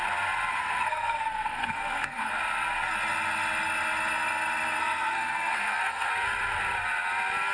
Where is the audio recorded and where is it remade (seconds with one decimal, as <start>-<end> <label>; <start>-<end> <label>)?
0.0-0.5 recorded; 0.5-2.3 remade; 2.3-4.8 recorded; 4.8-6.1 remade; 6.1-7.5 recorded